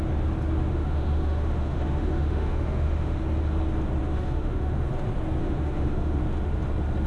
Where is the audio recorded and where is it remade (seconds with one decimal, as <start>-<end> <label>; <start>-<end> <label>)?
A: 0.0-0.7 recorded; 0.7-3.2 remade; 3.2-4.0 recorded; 4.0-4.9 remade; 4.9-5.4 recorded; 5.4-6.2 remade; 6.2-7.1 recorded